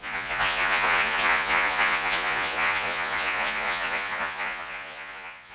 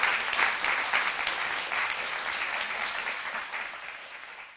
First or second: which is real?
second